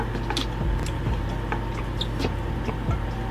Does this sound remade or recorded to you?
recorded